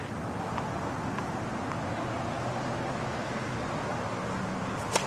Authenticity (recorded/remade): recorded